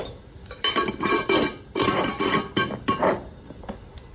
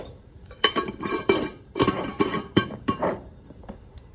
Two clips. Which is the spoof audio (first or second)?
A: second